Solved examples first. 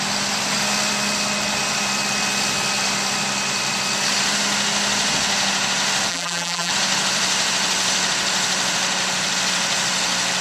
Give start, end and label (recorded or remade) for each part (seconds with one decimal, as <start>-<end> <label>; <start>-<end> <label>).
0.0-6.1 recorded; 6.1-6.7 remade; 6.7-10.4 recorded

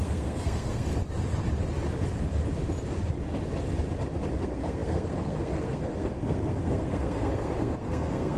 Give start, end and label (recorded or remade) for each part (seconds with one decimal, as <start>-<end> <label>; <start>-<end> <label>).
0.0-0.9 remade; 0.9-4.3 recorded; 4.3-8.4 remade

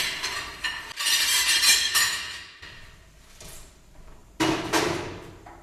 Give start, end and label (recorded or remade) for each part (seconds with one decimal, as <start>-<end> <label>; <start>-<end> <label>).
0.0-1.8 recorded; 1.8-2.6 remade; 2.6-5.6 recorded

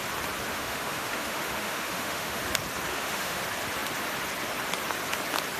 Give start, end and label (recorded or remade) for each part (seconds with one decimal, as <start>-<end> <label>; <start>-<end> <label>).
0.0-0.5 recorded; 0.5-2.4 remade; 2.4-2.9 recorded; 2.9-3.4 remade; 3.4-5.6 recorded

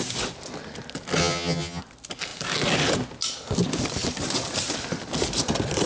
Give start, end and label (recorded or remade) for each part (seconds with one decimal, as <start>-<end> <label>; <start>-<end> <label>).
0.0-1.2 recorded; 1.2-1.8 remade; 1.8-5.9 recorded

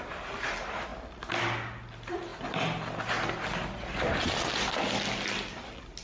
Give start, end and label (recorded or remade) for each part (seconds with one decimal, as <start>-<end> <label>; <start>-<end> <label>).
0.0-6.0 recorded